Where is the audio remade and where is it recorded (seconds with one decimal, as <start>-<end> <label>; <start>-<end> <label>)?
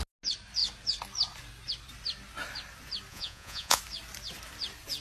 0.0-3.1 recorded; 3.1-3.8 remade; 3.8-5.0 recorded